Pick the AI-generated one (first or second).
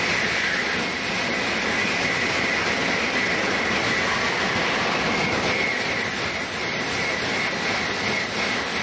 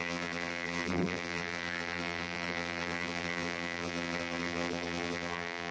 second